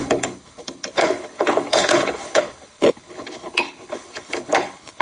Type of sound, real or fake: fake